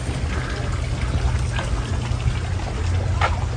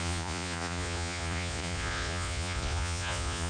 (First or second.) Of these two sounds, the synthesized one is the second